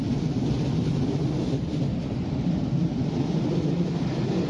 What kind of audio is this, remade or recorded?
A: recorded